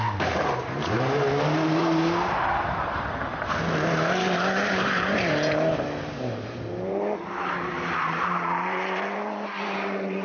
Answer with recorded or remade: remade